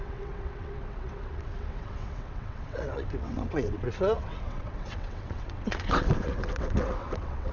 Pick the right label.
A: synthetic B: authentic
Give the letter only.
A